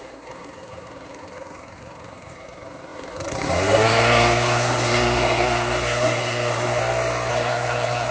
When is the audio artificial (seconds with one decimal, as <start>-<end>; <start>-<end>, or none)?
0.0-6.8; 7.3-8.1